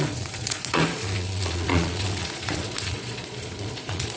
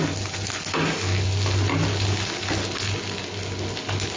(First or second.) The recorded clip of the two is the second